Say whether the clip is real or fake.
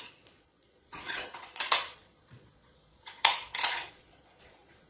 fake